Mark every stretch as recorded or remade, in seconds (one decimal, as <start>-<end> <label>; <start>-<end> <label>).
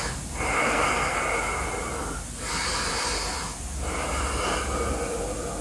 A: 0.0-0.6 recorded; 0.6-1.2 remade; 1.2-5.6 recorded